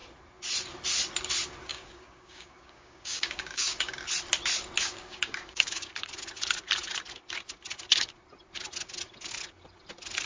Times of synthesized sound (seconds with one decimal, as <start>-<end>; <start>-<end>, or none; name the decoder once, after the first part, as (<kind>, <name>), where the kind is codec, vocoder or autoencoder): 1.7-3.9 (codec, DAC); 4.8-5.9